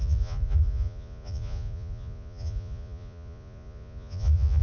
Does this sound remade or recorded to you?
remade